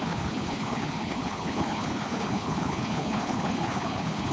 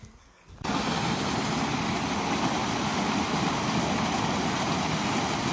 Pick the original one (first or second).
second